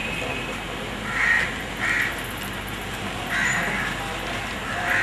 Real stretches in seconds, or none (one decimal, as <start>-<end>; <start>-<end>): 0.0-5.0